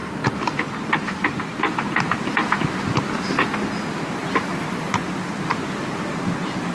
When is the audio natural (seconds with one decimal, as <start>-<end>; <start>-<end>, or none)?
0.0-6.7